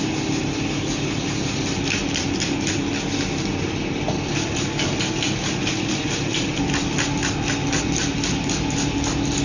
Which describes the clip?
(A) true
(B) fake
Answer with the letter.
A